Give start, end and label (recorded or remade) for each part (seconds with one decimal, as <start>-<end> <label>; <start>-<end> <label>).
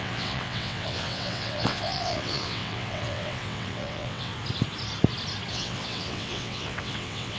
0.0-4.3 remade; 4.3-5.5 recorded; 5.5-7.4 remade